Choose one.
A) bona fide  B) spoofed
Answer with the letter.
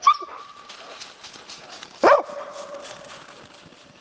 B